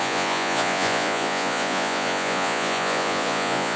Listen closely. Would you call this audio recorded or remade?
remade